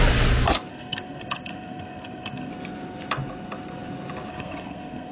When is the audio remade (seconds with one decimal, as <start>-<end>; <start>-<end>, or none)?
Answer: 0.7-2.5; 4.3-5.1